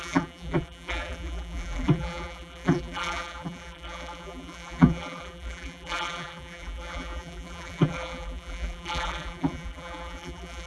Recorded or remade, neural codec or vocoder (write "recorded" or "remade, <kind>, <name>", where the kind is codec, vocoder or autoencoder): remade, vocoder, BigVGAN v2